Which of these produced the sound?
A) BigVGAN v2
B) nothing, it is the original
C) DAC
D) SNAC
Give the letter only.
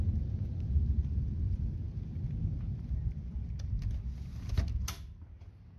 B